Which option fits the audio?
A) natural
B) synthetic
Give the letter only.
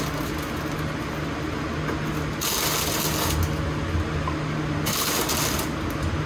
A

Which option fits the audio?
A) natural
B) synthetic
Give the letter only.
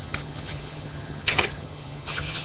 B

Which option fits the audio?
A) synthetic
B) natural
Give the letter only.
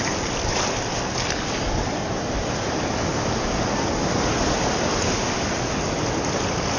B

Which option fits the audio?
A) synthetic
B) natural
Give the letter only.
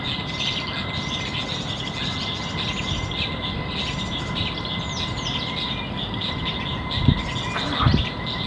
B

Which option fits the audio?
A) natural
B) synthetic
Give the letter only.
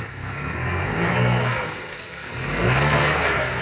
B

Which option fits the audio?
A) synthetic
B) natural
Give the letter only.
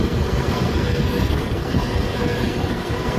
A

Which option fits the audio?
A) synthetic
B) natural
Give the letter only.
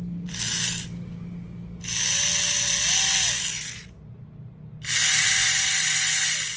B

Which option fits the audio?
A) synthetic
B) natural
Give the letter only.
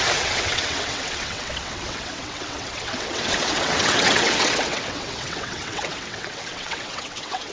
A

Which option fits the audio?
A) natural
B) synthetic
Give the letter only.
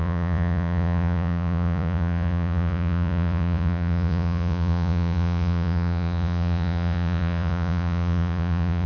B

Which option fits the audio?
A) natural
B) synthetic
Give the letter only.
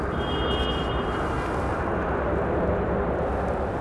A